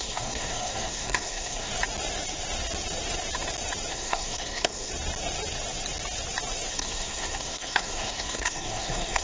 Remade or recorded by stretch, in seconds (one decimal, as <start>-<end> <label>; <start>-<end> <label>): 0.0-1.7 remade; 1.7-3.9 recorded; 3.9-4.9 remade; 4.9-6.7 recorded; 6.7-9.2 remade